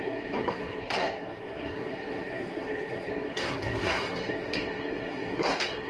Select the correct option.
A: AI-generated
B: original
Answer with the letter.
A